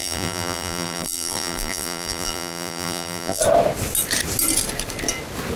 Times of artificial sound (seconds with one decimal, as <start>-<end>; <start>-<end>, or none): 0.0-3.4

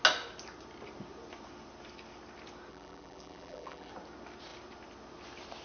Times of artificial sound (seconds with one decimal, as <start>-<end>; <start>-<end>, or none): 2.7-3.9

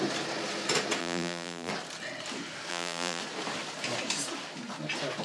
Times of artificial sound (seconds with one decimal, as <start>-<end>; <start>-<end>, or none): 1.0-1.7; 2.7-3.2

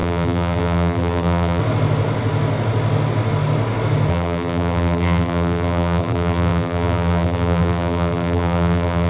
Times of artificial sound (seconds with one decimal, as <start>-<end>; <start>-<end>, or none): 0.0-1.6; 4.1-9.1

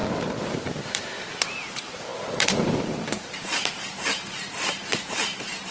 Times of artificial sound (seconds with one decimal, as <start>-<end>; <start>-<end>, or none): 1.4-5.7